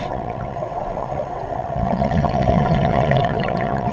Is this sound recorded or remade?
remade